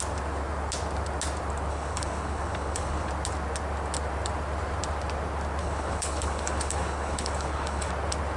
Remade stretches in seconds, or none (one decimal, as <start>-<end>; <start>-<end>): 1.7-3.1; 5.6-7.9